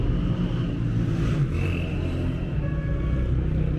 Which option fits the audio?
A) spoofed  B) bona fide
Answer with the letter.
B